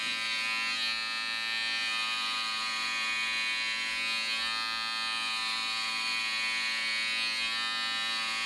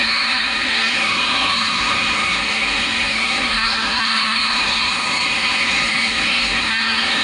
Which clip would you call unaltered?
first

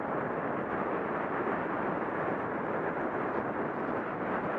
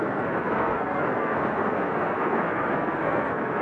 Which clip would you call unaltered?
first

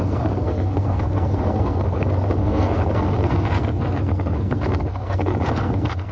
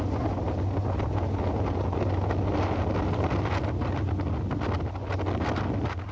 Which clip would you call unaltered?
second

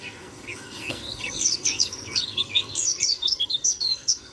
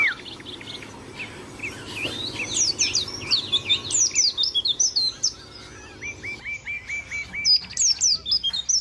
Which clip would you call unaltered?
second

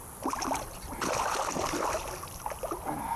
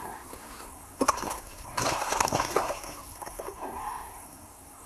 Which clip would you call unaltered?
first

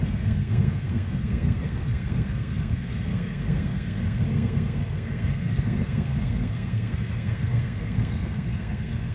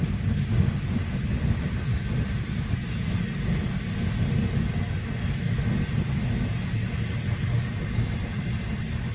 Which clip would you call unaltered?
second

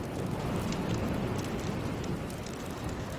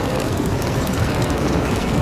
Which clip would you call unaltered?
first